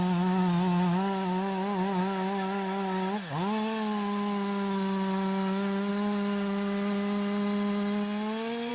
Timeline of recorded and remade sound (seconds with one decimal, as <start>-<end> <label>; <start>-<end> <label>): 0.0-8.7 recorded